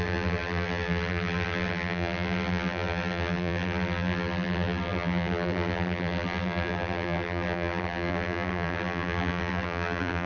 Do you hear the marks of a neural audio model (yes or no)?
yes